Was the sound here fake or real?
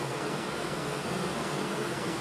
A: fake